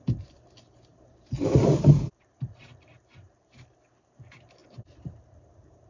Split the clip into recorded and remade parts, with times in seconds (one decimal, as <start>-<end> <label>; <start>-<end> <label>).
0.0-5.9 remade

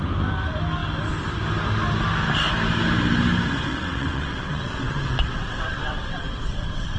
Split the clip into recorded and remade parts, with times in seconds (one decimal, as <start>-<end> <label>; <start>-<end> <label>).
0.0-3.7 recorded; 3.7-7.0 remade

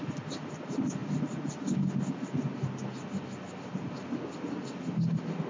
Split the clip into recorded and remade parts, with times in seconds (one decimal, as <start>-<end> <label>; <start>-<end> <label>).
0.0-5.5 recorded

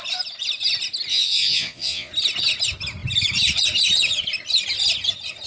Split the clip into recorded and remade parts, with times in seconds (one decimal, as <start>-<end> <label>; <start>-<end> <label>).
0.0-1.1 recorded; 1.1-2.1 remade; 2.1-5.5 recorded

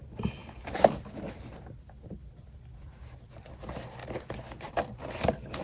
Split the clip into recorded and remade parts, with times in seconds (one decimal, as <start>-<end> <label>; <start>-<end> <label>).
0.0-5.6 recorded

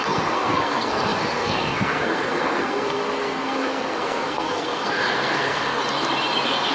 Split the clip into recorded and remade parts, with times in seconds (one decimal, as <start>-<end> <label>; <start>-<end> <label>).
0.0-5.8 remade; 5.8-6.7 recorded

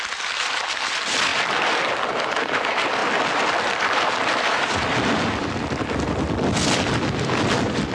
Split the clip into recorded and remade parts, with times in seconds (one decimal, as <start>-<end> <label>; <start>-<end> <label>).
0.0-7.9 recorded

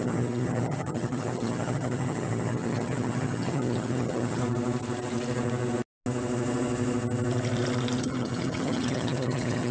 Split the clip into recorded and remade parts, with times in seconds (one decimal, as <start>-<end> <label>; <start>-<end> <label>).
0.0-4.4 remade; 4.4-8.0 recorded; 8.0-9.7 remade